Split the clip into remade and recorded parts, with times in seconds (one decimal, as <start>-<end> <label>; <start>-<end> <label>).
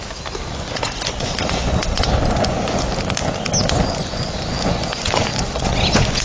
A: 0.0-0.5 recorded; 0.5-2.9 remade; 2.9-3.7 recorded; 3.7-6.2 remade